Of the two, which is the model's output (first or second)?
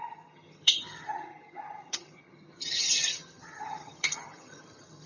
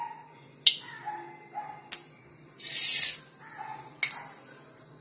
first